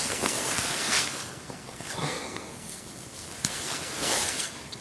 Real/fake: fake